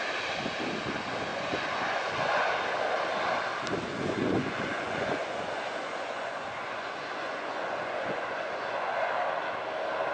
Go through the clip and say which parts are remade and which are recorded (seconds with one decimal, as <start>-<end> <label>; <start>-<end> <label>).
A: 0.0-1.3 recorded; 1.3-2.5 remade; 2.5-3.9 recorded; 3.9-9.1 remade; 9.1-10.1 recorded